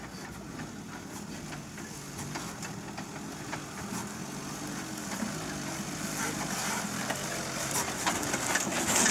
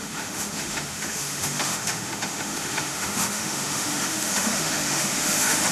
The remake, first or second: second